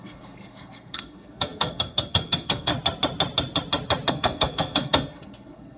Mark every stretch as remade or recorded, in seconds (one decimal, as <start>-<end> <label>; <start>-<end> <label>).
0.0-2.7 remade; 2.7-4.1 recorded; 4.1-5.8 remade